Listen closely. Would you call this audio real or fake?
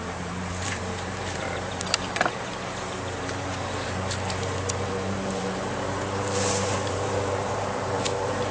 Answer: fake